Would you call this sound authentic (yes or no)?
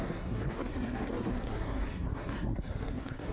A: no